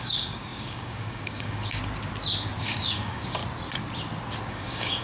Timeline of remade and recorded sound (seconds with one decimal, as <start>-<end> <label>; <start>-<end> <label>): 0.0-1.8 remade; 1.8-2.6 recorded; 2.6-3.4 remade; 3.4-4.5 recorded; 4.5-5.0 remade